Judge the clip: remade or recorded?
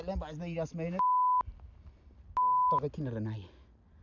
recorded